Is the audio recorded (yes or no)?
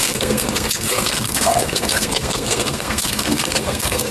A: no